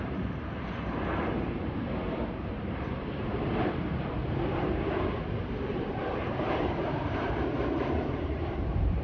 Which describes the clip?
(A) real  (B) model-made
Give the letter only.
B